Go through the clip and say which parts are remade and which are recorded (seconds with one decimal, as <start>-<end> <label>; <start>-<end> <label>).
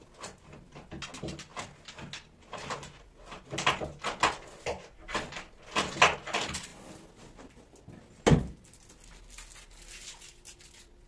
0.0-11.1 recorded